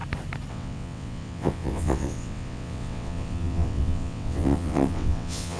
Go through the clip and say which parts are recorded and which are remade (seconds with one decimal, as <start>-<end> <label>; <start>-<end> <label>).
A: 0.0-0.5 recorded; 0.5-5.6 remade